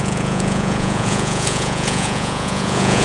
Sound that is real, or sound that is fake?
fake